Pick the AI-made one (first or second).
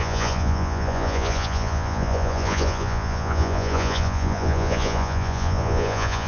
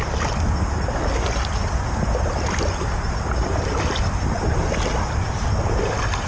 first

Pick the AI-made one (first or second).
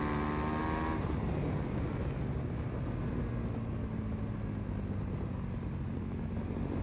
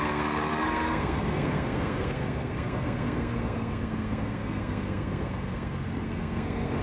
second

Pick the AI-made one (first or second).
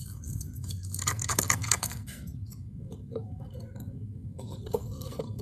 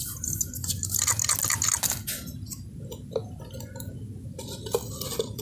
first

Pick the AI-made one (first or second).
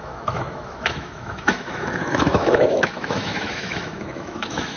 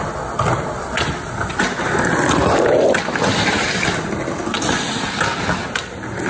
first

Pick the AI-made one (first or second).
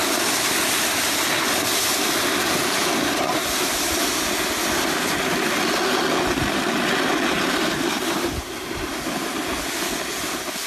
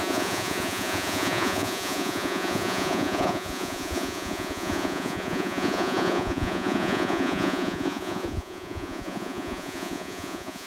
second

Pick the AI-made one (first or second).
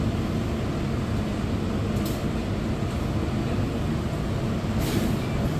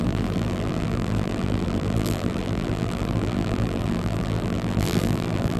second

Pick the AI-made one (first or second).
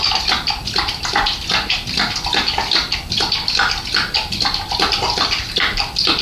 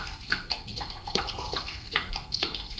second